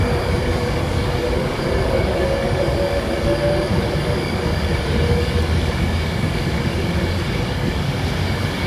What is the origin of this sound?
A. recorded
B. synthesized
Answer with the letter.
B